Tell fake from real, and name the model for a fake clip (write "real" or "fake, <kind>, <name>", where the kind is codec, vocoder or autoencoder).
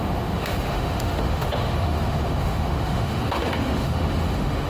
fake, autoencoder, DAC-VAE